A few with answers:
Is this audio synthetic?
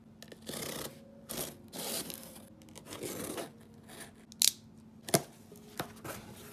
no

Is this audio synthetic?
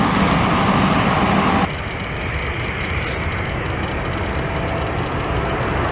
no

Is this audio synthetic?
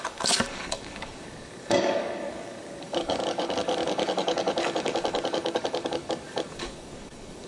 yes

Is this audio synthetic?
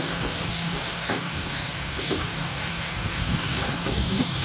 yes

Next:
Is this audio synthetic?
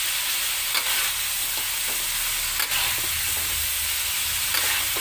no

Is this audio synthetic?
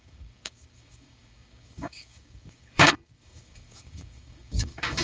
yes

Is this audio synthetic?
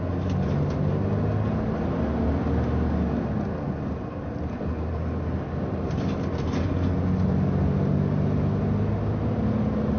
no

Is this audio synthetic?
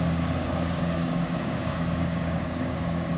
yes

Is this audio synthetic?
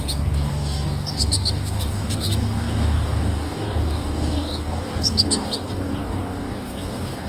yes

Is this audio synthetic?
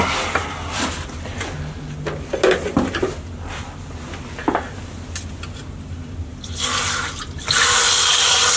no